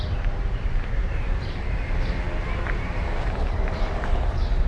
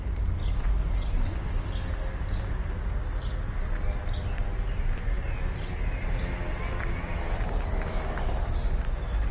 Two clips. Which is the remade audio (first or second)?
first